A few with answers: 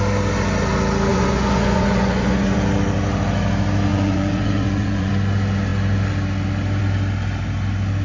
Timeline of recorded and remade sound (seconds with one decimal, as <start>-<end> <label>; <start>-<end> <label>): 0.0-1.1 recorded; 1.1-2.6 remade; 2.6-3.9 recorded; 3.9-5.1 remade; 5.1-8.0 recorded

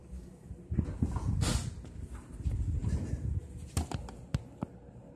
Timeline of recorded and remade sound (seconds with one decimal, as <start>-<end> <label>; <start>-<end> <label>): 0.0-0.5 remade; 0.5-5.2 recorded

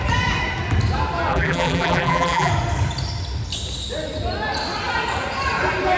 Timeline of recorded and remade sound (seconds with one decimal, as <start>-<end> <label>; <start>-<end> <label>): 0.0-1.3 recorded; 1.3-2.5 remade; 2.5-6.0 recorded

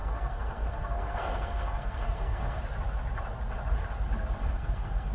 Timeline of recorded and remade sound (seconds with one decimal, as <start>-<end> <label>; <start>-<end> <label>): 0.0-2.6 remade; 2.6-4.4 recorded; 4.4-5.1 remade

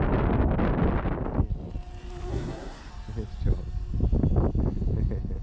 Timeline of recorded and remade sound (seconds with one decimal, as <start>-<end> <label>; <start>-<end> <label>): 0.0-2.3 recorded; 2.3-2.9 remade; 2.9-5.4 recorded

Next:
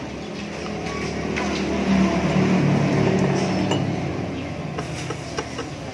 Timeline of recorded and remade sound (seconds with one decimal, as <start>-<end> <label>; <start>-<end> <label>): 0.0-4.1 recorded; 4.1-4.8 remade; 4.8-5.9 recorded

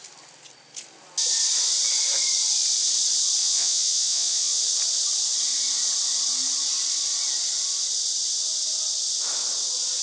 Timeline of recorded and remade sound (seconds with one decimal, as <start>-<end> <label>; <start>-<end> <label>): 0.0-3.4 recorded; 3.4-4.6 remade; 4.6-10.0 recorded

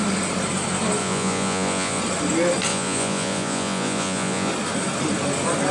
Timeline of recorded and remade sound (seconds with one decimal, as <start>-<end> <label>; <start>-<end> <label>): 0.0-1.0 recorded; 1.0-2.0 remade; 2.0-2.7 recorded; 2.7-4.5 remade; 4.5-5.7 recorded